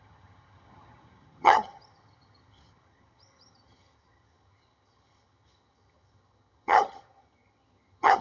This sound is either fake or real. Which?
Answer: fake